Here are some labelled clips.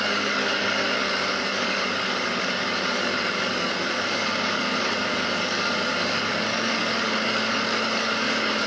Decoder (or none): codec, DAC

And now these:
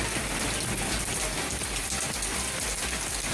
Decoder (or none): none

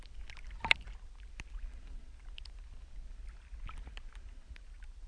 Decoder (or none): none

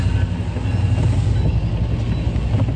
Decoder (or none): none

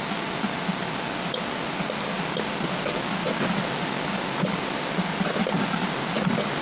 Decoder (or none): none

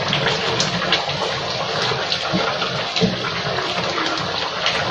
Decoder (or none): none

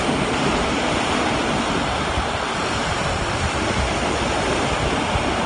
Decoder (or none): none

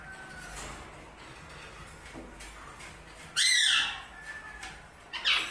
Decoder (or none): none